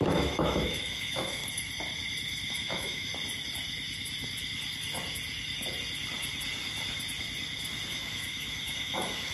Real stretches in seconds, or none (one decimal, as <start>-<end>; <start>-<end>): 1.4-2.5; 3.1-7.9